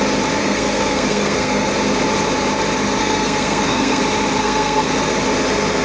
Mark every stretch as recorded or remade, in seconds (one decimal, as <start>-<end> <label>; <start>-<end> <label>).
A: 0.0-0.4 recorded; 0.4-1.7 remade; 1.7-3.0 recorded; 3.0-4.0 remade; 4.0-4.4 recorded; 4.4-4.9 remade; 4.9-5.8 recorded